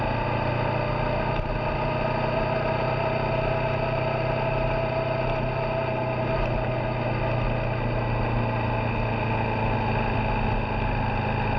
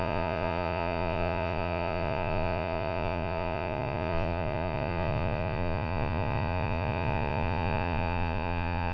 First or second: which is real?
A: first